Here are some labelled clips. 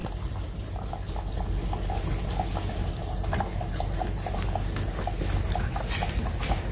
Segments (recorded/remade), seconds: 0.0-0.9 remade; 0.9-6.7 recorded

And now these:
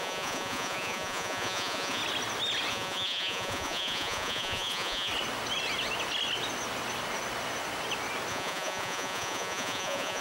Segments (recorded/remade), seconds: 0.0-2.0 remade; 2.0-2.7 recorded; 2.7-5.1 remade; 5.1-8.3 recorded; 8.3-10.2 remade

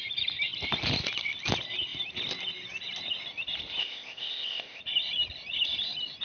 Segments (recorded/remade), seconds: 0.0-3.8 recorded; 3.8-4.8 remade; 4.8-6.2 recorded

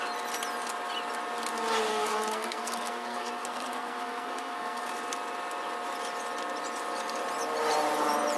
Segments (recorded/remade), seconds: 0.0-1.9 recorded; 1.9-4.9 remade; 4.9-8.4 recorded